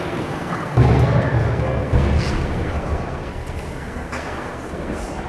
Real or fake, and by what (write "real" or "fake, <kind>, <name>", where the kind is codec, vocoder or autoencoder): fake, codec, SNAC